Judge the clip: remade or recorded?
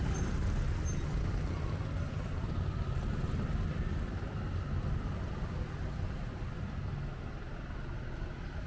recorded